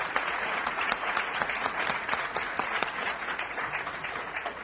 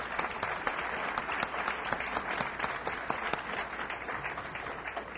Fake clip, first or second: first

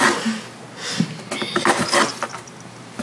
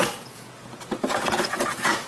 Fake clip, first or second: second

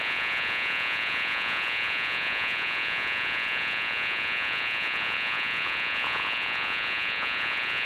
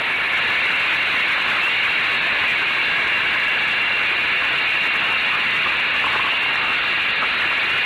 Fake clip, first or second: first